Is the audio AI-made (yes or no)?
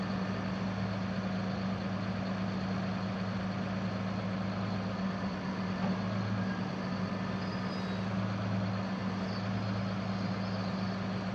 no